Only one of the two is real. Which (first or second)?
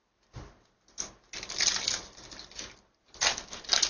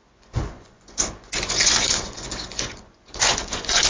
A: first